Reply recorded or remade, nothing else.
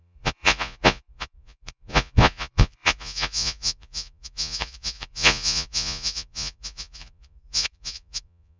remade